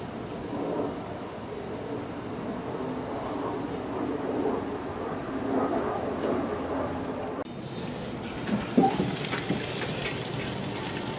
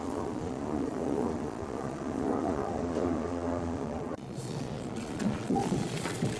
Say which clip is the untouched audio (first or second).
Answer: first